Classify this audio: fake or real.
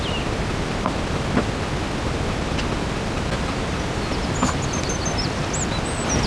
real